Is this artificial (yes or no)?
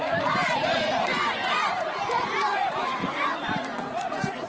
yes